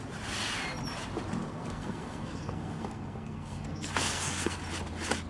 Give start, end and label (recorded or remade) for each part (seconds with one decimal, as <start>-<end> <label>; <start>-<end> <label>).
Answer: 0.0-1.4 recorded; 1.4-4.6 remade; 4.6-5.3 recorded